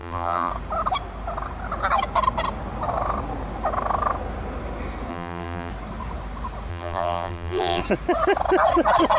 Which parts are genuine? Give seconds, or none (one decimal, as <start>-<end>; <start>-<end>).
0.5-5.1; 5.7-6.7; 7.8-9.2